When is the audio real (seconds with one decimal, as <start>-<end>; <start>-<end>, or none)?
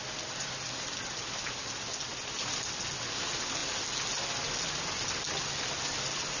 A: 0.0-6.4